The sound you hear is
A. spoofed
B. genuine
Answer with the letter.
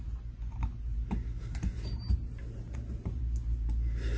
B